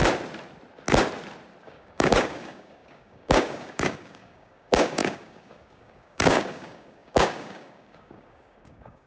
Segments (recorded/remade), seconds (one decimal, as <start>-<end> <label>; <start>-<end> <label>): 0.0-1.6 recorded; 1.6-9.1 remade